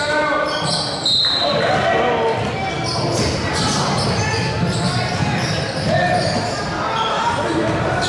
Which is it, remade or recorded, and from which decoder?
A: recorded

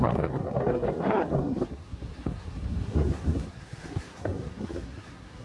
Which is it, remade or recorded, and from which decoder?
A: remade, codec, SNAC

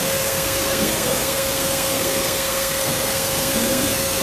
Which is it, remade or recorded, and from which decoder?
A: remade, codec, SNAC